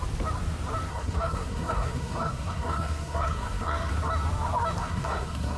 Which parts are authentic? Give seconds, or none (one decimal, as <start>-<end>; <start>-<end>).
0.0-0.9; 3.9-4.8